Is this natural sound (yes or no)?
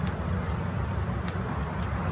yes